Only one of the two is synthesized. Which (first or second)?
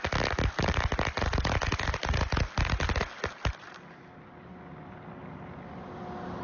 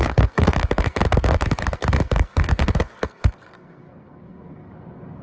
second